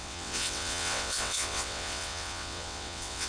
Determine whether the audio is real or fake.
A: fake